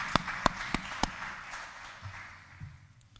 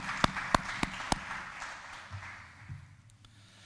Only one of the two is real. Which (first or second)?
second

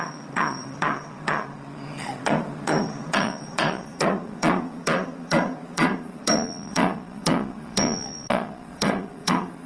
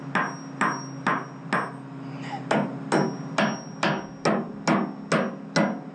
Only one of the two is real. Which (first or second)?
second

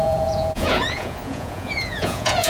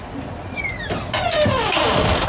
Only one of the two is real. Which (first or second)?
second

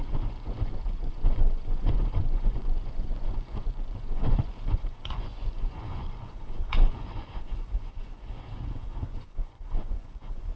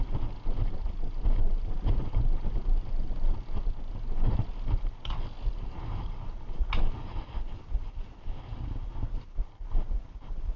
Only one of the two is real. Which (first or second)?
second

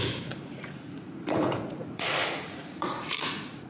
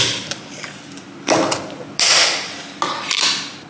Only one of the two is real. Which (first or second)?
second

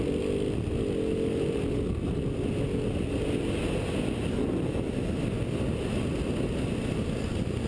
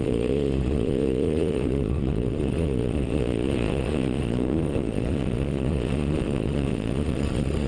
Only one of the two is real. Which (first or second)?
first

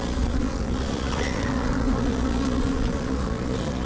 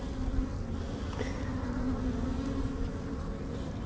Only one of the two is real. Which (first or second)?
second